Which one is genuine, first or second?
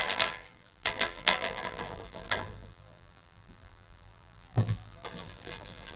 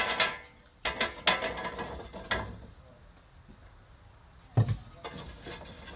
second